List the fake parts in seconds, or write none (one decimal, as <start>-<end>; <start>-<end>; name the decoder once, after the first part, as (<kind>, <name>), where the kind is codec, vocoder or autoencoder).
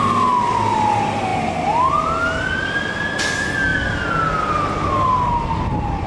none